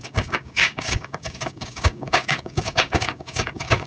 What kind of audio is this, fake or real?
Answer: fake